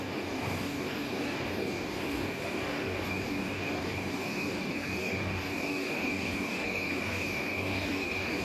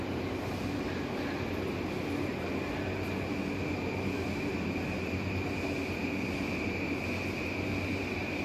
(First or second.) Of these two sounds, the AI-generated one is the first